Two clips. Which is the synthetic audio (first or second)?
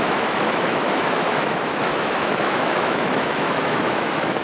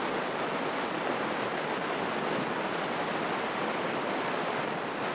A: first